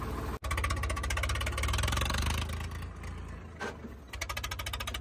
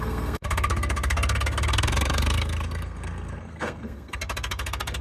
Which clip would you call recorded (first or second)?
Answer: first